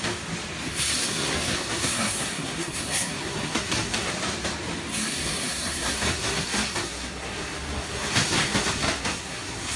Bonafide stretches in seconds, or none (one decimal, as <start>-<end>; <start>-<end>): 0.0-0.7; 4.1-4.9